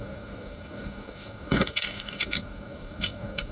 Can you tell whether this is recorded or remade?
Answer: remade